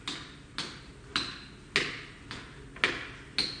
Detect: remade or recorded recorded